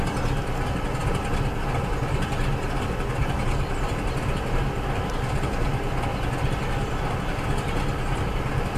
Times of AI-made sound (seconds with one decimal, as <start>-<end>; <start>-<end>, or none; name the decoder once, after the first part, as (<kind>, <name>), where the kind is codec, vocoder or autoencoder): none